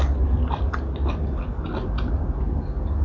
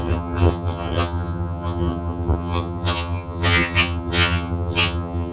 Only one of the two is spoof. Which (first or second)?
second